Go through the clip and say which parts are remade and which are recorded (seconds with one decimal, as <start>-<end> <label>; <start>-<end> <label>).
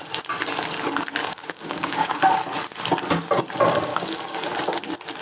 0.0-1.2 recorded; 1.2-2.3 remade; 2.3-3.9 recorded; 3.9-4.4 remade; 4.4-5.2 recorded